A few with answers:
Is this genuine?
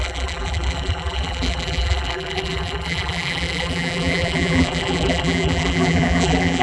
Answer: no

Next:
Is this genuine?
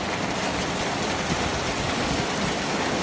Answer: yes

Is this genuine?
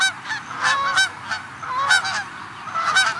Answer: yes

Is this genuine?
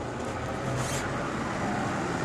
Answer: yes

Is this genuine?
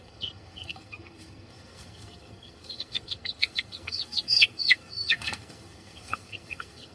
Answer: no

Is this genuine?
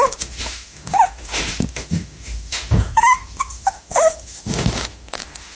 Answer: no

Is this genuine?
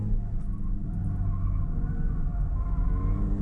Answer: yes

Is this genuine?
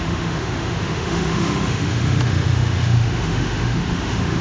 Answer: no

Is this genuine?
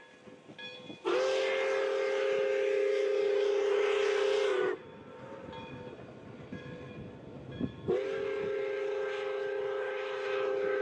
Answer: yes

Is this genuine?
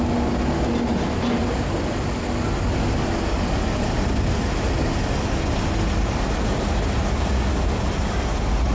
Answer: yes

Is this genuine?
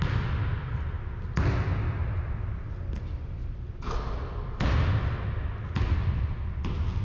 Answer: yes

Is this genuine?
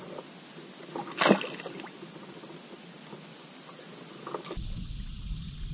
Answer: yes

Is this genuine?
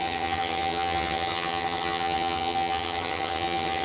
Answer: no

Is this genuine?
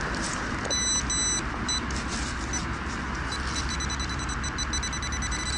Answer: yes